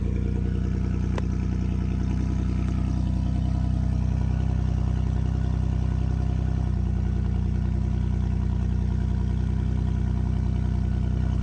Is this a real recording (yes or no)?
yes